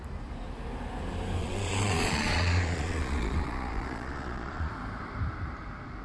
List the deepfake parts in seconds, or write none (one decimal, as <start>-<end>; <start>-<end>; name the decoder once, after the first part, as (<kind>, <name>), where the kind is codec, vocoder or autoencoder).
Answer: 1.4-4.7 (vocoder, Vocos)